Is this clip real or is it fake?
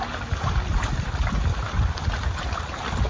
real